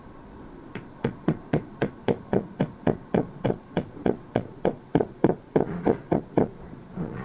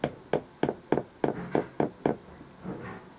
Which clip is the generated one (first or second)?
first